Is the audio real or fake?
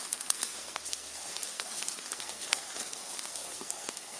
fake